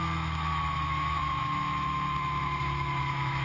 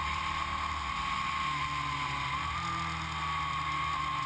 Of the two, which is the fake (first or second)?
first